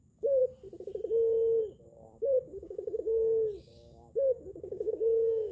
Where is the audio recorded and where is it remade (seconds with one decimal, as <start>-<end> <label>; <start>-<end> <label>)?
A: 0.0-0.4 remade; 0.4-1.6 recorded; 1.6-5.5 remade

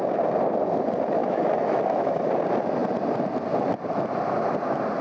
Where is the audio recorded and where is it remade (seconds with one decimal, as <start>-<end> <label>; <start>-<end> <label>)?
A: 0.0-1.2 recorded; 1.2-2.2 remade; 2.2-5.0 recorded

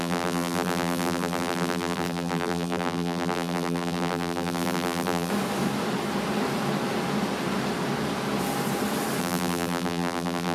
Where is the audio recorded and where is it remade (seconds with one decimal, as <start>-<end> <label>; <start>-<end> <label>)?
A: 0.0-5.3 remade; 5.3-9.2 recorded; 9.2-10.5 remade

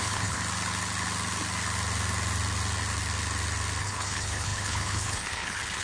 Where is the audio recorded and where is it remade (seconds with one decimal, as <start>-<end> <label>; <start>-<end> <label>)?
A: 0.0-0.4 remade; 0.4-3.8 recorded; 3.8-5.8 remade

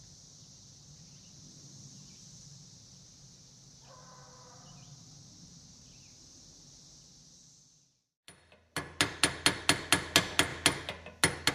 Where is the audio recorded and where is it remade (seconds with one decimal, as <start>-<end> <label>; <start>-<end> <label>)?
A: 0.0-11.5 recorded